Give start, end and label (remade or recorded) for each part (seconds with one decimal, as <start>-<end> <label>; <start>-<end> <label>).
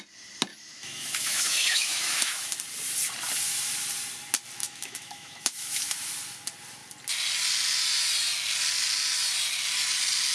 0.0-0.5 recorded; 0.5-2.5 remade; 2.5-4.6 recorded; 4.6-6.1 remade; 6.1-10.3 recorded